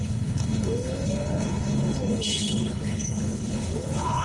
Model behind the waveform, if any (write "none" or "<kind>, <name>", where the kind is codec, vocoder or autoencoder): codec, HILCodec